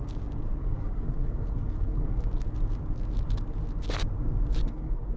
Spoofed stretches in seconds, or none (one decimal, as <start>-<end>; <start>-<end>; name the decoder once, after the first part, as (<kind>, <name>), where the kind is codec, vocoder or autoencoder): 0.6-2.3 (codec, SNAC); 4.6-5.2